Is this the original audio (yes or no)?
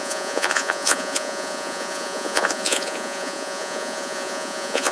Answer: no